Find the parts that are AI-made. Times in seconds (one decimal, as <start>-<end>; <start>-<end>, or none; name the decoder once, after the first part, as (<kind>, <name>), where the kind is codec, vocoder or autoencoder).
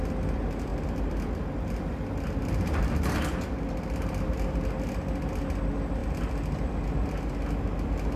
none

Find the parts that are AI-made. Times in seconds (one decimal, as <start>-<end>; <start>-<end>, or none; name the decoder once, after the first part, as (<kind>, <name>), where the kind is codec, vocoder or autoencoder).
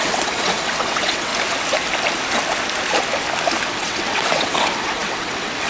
0.0-1.3 (vocoder, WaveNeXt); 3.7-5.7